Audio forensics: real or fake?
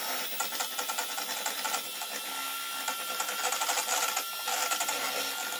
real